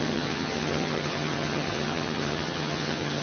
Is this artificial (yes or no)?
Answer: yes